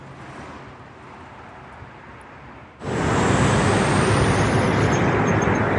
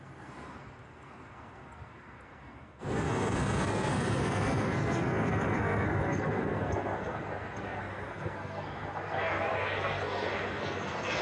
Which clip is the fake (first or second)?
second